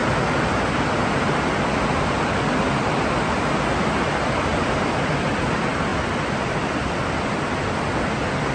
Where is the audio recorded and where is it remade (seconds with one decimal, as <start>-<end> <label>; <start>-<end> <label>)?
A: 0.0-4.5 recorded; 4.5-5.3 remade; 5.3-5.9 recorded; 5.9-7.4 remade; 7.4-8.5 recorded